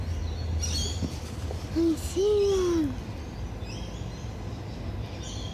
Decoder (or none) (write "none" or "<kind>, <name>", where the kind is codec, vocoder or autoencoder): none